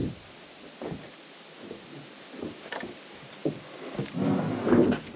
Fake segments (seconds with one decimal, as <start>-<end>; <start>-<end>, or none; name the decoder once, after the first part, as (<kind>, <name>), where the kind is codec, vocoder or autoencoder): none